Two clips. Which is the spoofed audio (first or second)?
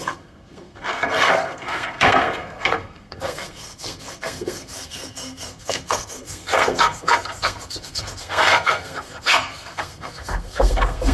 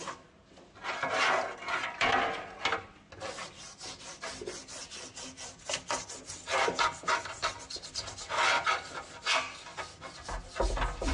first